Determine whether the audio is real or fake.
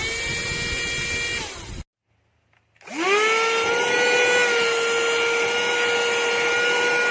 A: real